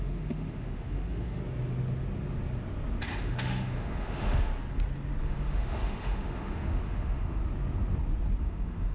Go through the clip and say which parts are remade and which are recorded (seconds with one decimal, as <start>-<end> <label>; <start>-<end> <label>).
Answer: 0.0-1.4 remade; 1.4-3.2 recorded; 3.2-4.5 remade; 4.5-5.2 recorded; 5.2-7.4 remade; 7.4-8.4 recorded; 8.4-8.9 remade